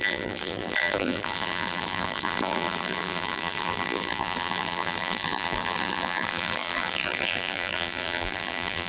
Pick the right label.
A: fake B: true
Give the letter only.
A